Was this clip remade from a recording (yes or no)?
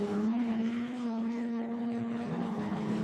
yes